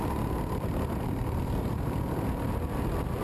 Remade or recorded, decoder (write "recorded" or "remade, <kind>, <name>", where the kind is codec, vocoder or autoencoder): recorded